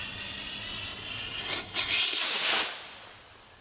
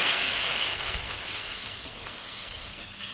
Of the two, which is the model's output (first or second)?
second